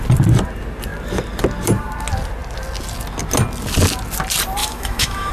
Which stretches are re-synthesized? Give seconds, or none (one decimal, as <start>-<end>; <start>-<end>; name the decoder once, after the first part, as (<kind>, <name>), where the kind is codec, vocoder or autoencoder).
4.6-5.3 (autoencoder, DAC-VAE)